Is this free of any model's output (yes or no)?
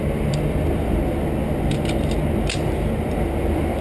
no